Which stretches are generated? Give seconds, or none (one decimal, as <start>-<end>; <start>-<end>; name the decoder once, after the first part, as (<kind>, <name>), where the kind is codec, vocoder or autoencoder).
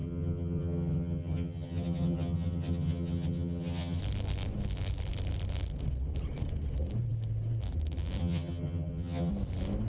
0.0-4.0 (vocoder, HiFi-GAN); 8.2-9.3